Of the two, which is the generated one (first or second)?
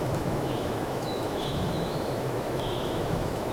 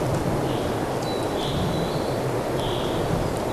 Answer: first